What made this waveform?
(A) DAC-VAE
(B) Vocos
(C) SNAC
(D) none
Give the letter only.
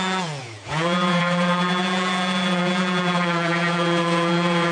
B